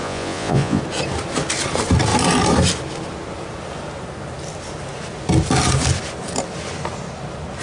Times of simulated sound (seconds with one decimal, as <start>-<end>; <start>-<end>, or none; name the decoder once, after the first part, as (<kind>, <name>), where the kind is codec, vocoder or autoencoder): 0.0-0.8 (vocoder, Vocos)